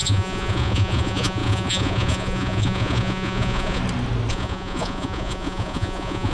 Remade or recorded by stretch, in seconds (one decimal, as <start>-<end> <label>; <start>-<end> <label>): 0.0-3.8 remade; 3.8-4.3 recorded; 4.3-6.3 remade